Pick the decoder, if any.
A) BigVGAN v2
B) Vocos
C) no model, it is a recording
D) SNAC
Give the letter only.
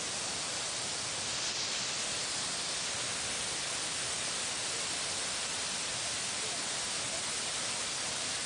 C